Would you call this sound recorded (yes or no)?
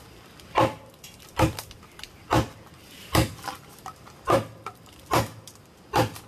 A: yes